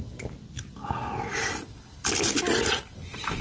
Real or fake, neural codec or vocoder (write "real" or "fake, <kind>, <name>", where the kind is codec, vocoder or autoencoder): real